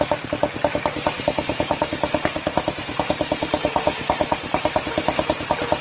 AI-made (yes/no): no